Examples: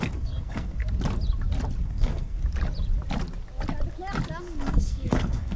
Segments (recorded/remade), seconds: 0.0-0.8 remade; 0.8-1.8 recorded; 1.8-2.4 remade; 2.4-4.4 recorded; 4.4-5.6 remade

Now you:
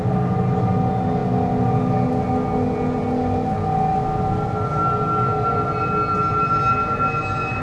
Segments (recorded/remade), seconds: 0.0-7.6 recorded

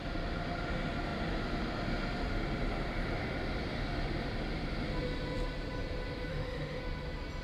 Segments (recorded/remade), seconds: 0.0-6.3 recorded; 6.3-6.8 remade; 6.8-7.4 recorded

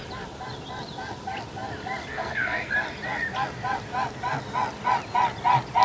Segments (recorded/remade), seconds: 0.0-2.1 recorded; 2.1-2.7 remade; 2.7-5.8 recorded

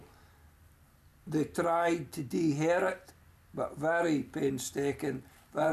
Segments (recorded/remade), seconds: 0.0-1.1 remade; 1.1-4.5 recorded; 4.5-5.7 remade

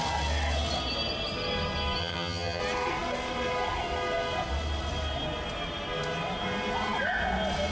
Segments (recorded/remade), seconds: 0.0-2.0 recorded; 2.0-2.6 remade; 2.6-7.7 recorded